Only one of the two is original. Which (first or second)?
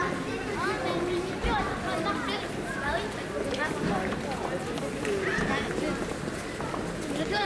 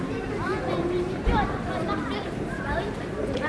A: first